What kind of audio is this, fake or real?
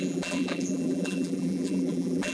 fake